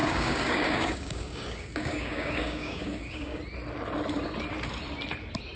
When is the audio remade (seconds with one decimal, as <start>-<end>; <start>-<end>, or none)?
0.0-3.4